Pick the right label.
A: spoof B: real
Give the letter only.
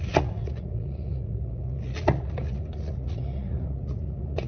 A